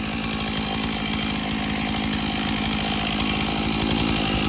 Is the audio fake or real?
real